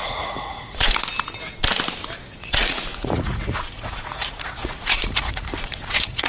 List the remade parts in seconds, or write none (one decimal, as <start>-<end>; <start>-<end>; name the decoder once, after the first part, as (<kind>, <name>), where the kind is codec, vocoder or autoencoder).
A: 0.0-1.0 (vocoder, Vocos); 2.4-6.3